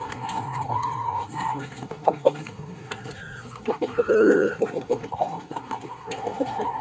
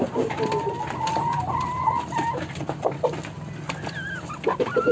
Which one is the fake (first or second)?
first